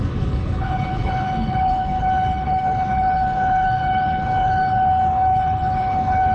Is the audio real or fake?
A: fake